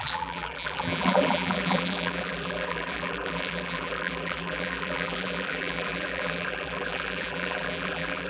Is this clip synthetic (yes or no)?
yes